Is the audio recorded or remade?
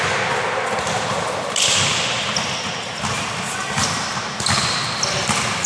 recorded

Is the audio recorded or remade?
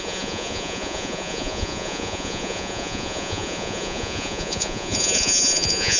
remade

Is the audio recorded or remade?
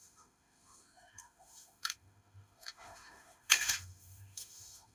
remade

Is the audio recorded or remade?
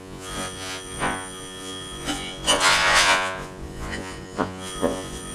remade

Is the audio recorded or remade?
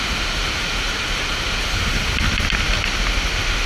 recorded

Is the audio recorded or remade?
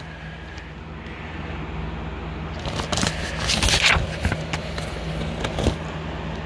recorded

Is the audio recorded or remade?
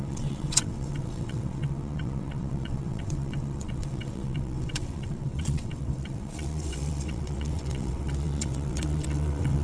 remade